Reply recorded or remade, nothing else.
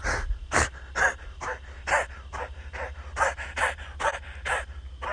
recorded